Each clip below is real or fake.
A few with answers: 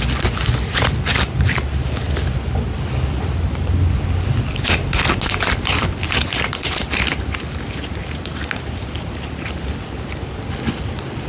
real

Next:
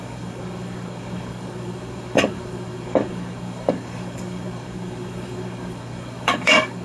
fake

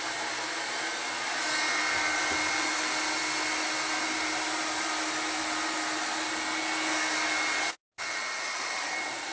real